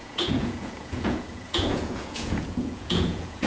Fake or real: fake